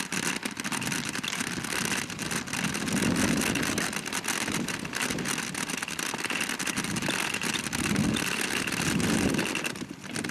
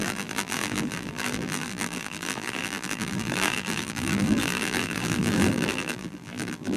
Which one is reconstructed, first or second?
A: second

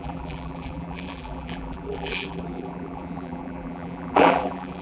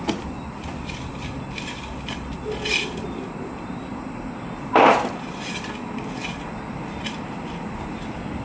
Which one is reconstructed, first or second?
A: first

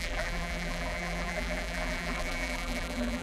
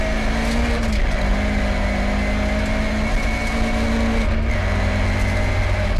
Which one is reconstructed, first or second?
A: first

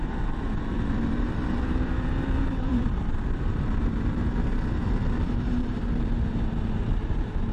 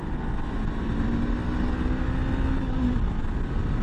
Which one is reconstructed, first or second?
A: first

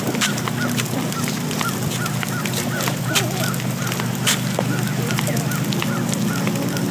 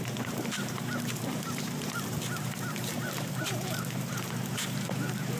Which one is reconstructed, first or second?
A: second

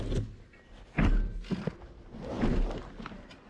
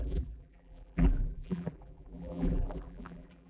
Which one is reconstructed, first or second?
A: second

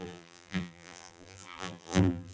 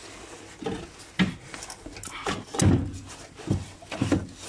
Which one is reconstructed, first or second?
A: first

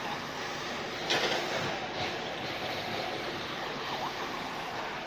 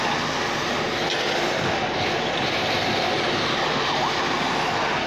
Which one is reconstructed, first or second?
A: first